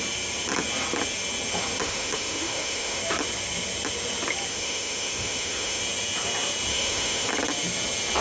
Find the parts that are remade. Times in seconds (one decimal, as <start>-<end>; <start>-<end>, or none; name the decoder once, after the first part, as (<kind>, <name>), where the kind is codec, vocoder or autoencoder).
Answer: 1.8-3.0 (autoencoder, DAC-VAE); 4.5-5.8; 6.7-7.3

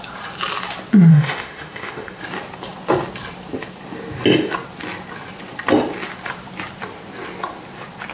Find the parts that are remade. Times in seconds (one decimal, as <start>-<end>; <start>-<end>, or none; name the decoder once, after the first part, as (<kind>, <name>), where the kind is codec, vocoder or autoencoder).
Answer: 1.1-2.2 (autoencoder, DAC-VAE)

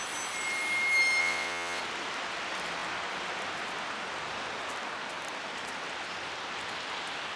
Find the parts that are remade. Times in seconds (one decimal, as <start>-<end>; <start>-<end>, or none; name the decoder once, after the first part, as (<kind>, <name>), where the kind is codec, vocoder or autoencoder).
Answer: 1.2-1.8 (vocoder, WaveNeXt)

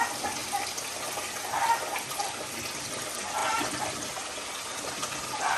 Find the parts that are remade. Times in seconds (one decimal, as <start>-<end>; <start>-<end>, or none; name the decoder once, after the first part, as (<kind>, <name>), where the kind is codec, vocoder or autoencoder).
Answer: none

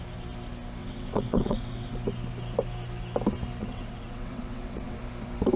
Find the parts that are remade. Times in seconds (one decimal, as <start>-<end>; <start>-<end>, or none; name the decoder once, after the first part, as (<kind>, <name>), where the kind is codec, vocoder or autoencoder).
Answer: 0.8-1.9 (vocoder, WaveNeXt); 3.6-5.0

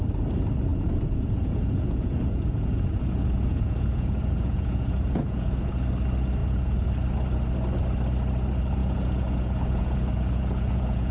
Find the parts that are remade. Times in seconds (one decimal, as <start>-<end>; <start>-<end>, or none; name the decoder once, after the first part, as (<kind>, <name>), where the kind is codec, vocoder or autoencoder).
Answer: 0.7-5.7 (vocoder, Vocos); 6.4-6.9; 8.8-11.1

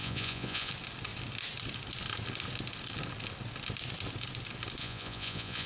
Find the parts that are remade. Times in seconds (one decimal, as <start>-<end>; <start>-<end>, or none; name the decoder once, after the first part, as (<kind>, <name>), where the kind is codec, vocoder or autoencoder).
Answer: 0.0-0.7 (vocoder, Vocos); 4.8-5.7

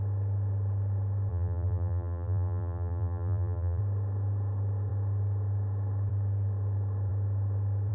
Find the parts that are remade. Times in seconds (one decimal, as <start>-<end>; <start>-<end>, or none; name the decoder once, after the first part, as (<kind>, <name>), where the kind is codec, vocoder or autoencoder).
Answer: 1.3-3.8 (vocoder, BigVGAN v2)